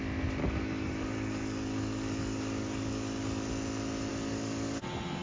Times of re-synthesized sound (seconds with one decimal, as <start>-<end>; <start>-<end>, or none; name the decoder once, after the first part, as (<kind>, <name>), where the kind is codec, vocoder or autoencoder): 0.4-3.5 (codec, DAC); 4.1-4.8

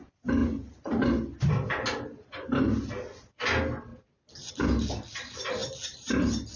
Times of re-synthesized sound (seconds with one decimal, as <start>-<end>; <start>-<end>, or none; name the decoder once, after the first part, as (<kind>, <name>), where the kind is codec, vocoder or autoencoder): none

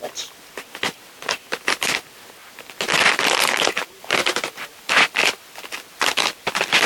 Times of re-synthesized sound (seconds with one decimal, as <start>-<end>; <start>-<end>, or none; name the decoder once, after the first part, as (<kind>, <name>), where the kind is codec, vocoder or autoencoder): 2.4-4.9 (vocoder, BigVGAN v2)

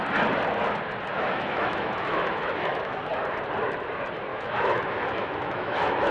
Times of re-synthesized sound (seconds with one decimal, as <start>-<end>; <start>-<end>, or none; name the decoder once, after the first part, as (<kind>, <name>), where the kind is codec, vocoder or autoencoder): 1.1-3.0 (autoencoder, DAC-VAE); 4.3-6.1